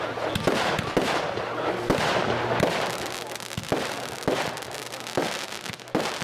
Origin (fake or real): real